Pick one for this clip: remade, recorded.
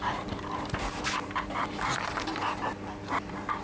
recorded